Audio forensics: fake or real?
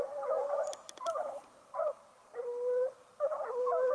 real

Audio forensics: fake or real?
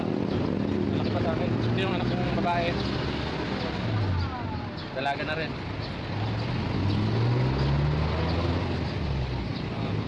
real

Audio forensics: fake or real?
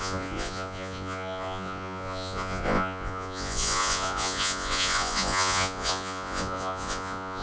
fake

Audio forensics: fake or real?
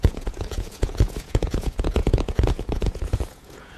fake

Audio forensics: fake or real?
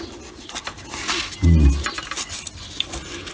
real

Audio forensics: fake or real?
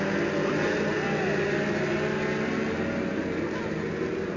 real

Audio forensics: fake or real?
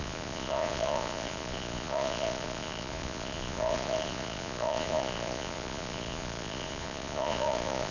fake